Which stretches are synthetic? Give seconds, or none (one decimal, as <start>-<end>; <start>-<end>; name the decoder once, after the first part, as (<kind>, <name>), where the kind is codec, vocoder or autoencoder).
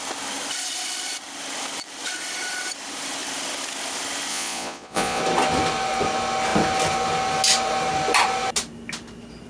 4.3-5.2 (vocoder, Vocos)